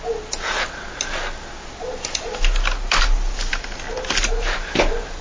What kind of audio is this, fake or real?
real